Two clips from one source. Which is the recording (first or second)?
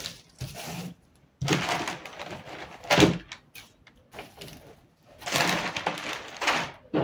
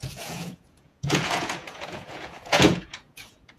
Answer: first